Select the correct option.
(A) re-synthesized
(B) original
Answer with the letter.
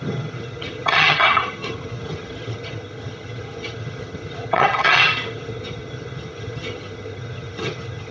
A